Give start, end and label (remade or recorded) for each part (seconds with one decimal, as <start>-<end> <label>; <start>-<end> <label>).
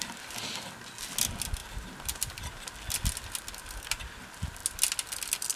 0.0-5.6 recorded